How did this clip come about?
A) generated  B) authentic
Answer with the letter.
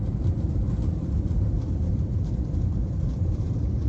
A